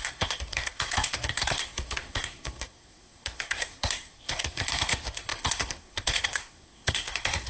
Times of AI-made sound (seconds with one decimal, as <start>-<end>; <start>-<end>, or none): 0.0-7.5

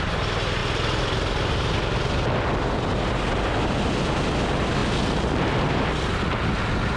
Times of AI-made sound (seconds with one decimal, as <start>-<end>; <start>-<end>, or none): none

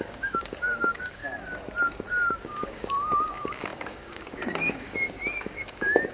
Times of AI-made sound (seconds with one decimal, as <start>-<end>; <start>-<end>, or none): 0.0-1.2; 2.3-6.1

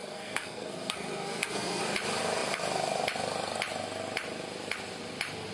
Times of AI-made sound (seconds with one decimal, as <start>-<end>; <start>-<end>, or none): 0.0-1.8

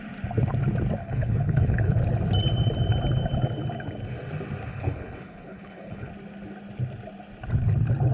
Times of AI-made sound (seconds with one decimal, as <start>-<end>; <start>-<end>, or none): 1.0-2.0; 4.7-6.1